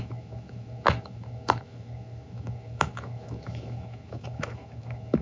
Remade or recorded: remade